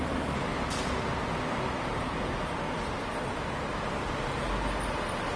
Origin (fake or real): real